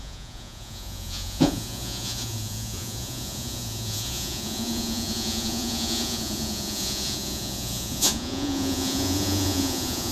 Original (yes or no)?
no